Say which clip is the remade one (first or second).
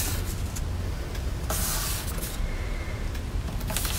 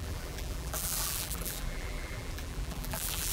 second